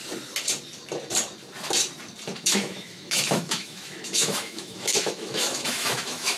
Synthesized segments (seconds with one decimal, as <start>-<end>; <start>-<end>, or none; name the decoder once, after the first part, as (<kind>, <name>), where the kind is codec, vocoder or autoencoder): 2.3-6.4 (autoencoder, DAC-VAE)